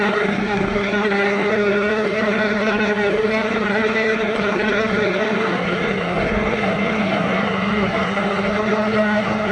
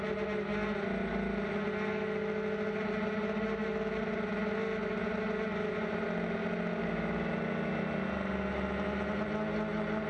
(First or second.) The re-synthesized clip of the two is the first